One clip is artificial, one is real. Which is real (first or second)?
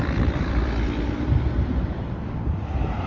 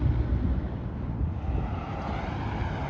second